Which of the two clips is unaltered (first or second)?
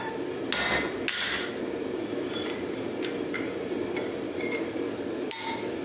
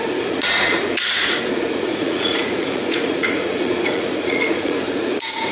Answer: first